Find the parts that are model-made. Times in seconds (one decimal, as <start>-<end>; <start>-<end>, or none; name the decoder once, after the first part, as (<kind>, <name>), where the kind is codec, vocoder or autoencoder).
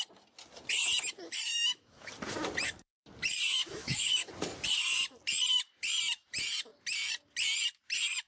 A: 1.5-2.1 (autoencoder, DAC-VAE); 3.8-4.3